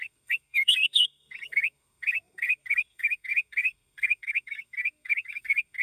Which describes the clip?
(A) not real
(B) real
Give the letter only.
A